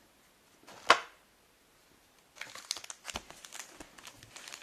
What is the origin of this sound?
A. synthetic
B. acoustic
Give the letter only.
B